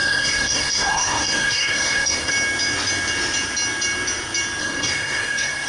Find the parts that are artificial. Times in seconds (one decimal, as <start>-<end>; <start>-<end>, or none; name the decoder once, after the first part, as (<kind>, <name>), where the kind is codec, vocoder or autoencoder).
0.0-2.3 (codec, SNAC); 4.6-5.7